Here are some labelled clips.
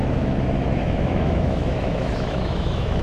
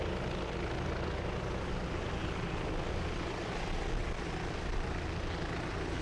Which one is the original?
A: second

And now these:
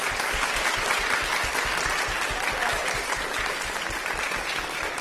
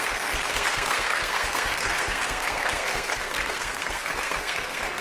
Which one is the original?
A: first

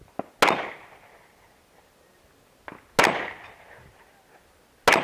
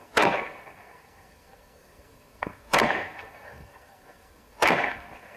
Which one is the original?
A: first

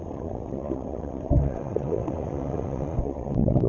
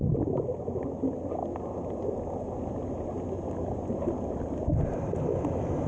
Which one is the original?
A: second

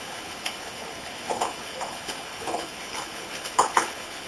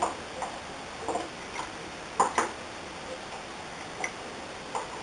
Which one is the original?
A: second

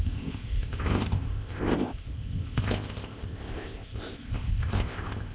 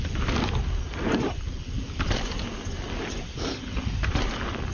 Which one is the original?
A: second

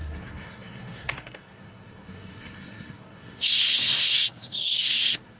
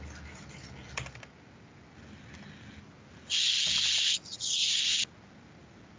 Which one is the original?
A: second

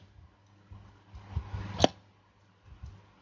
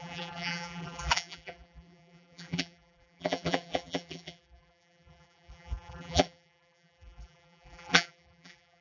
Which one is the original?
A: first